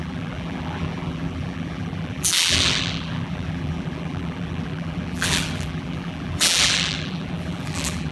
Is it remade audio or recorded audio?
remade